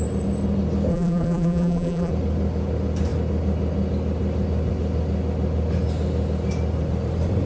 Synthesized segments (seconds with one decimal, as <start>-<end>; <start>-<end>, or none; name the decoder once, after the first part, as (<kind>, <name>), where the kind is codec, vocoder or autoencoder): 0.9-2.1 (vocoder, BigVGAN v2)